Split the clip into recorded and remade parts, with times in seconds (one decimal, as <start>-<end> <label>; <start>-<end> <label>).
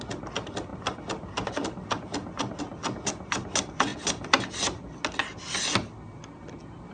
0.0-6.9 recorded